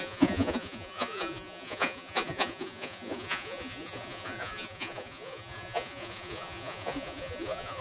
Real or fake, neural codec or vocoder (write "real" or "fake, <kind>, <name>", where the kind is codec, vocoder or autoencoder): fake, vocoder, Vocos